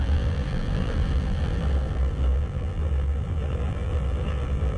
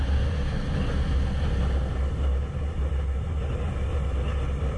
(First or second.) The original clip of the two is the second